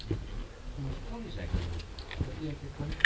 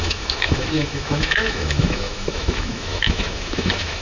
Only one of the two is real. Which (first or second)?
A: first